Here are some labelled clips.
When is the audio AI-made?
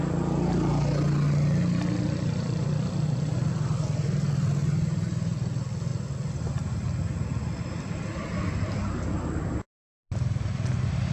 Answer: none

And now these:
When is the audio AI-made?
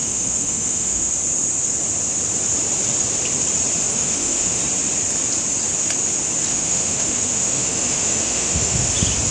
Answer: 0.0-1.1 (autoencoder, DAC-VAE); 3.9-4.6; 6.5-8.9